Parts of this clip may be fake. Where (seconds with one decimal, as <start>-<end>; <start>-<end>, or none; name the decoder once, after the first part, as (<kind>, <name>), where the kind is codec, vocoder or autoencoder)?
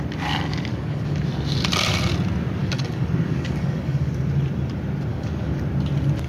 0.7-1.2 (codec, DAC); 2.6-4.1; 5.1-5.6